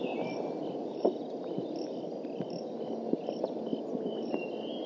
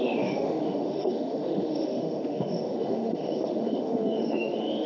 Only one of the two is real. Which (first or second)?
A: first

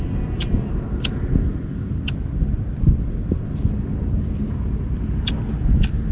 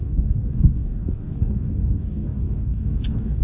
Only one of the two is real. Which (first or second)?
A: first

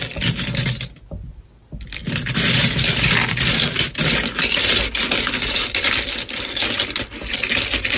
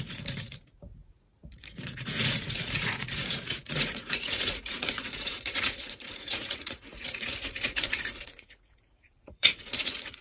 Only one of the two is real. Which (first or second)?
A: first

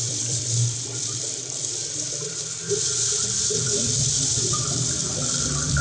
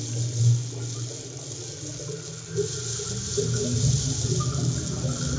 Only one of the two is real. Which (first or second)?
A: second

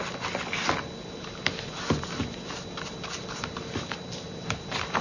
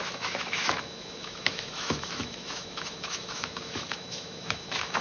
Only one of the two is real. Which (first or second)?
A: first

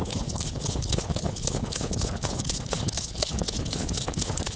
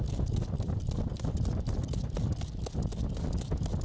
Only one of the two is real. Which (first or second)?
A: second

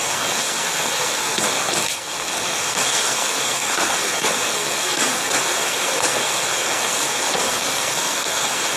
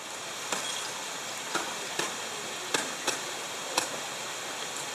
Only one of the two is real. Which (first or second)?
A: second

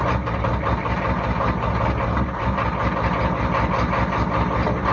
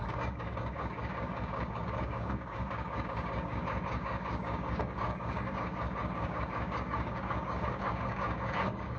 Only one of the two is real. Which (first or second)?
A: first